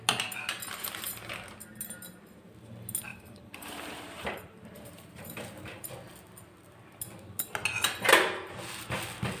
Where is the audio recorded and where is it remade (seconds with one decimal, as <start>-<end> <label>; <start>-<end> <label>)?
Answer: 0.0-3.1 recorded; 3.1-5.9 remade; 5.9-9.4 recorded